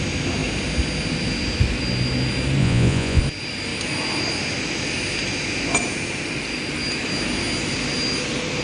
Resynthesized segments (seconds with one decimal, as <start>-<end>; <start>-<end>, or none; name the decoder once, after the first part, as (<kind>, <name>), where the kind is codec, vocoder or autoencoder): 2.6-3.2 (vocoder, Vocos)